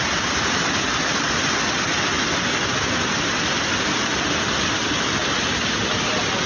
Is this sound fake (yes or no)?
no